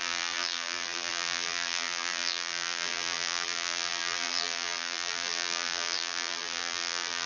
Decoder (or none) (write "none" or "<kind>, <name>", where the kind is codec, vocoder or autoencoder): vocoder, BigVGAN v2